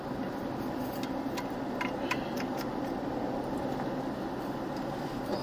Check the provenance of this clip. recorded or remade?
recorded